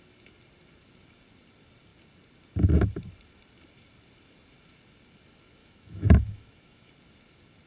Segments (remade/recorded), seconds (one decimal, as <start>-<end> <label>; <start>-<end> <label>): 0.0-5.6 recorded; 5.6-6.9 remade; 6.9-7.7 recorded